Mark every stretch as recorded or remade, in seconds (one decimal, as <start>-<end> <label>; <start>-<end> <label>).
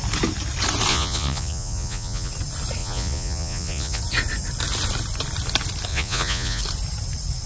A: 0.0-0.9 recorded; 0.9-2.3 remade; 2.3-2.8 recorded; 2.8-4.0 remade; 4.0-5.9 recorded; 5.9-6.6 remade; 6.6-7.5 recorded